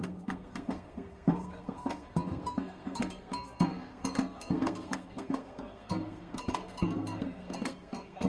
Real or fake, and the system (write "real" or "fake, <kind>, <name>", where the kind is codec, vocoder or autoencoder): fake, codec, SNAC